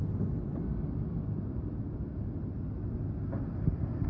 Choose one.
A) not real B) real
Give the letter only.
B